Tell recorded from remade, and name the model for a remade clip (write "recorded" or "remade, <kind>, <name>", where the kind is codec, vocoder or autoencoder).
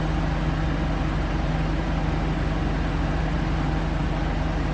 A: recorded